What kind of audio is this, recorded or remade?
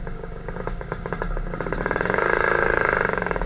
remade